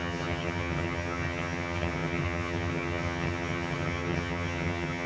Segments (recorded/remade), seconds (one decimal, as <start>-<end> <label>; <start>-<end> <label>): 0.0-5.1 remade